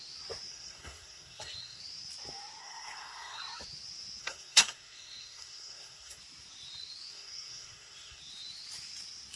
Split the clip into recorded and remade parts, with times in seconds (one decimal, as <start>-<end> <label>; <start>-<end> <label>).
0.0-0.5 recorded; 0.5-1.8 remade; 1.8-2.6 recorded; 2.6-3.4 remade; 3.4-4.2 recorded; 4.2-6.2 remade; 6.2-7.1 recorded; 7.1-8.2 remade; 8.2-9.4 recorded